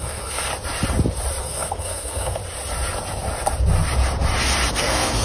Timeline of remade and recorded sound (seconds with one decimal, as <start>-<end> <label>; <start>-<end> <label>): 0.0-0.5 remade; 0.5-1.4 recorded; 1.4-2.4 remade; 2.4-4.8 recorded; 4.8-5.2 remade